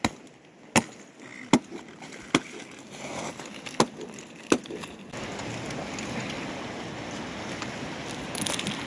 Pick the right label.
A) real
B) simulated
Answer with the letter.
A